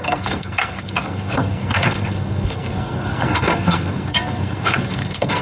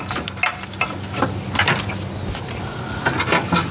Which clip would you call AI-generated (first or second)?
first